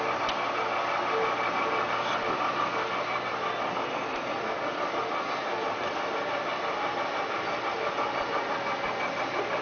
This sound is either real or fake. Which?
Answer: real